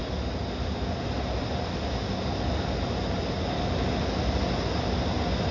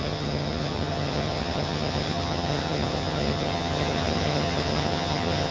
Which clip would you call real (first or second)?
first